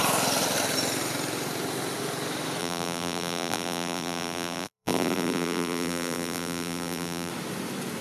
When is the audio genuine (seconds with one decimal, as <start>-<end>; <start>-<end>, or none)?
0.0-2.6; 7.3-8.0